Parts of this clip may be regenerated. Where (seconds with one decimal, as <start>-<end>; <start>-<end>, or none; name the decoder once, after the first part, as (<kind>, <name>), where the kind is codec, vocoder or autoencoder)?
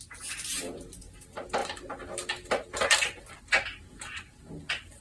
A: none